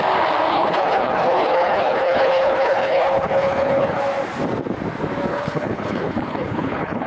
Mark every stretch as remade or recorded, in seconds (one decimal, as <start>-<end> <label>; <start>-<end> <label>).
0.0-0.5 recorded; 0.5-4.0 remade; 4.0-5.3 recorded; 5.3-7.1 remade